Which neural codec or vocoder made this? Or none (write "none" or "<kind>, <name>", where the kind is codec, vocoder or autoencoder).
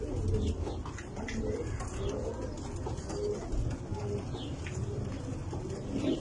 none